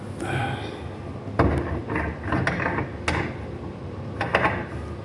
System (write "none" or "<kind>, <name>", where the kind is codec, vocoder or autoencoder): none